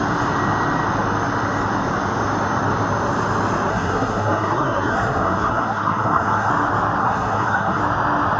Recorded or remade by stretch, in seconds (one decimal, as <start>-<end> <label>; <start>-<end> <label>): 0.0-3.7 recorded; 3.7-6.5 remade; 6.5-7.0 recorded; 7.0-7.8 remade; 7.8-8.4 recorded